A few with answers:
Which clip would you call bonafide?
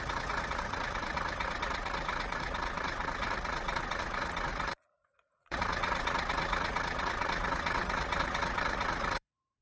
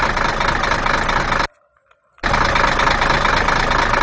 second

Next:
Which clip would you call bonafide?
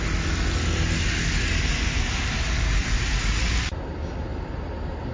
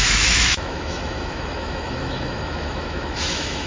first